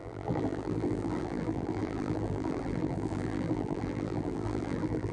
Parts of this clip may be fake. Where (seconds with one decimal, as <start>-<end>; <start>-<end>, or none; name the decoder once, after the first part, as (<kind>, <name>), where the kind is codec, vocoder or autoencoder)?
0.0-5.1 (vocoder, BigVGAN v2)